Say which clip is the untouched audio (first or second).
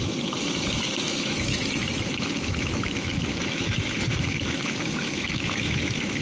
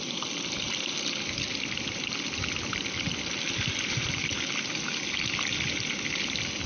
second